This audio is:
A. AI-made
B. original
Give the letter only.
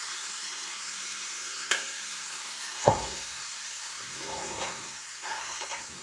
A